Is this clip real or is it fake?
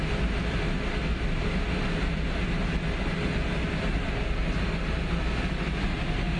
real